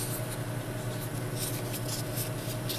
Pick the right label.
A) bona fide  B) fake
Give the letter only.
A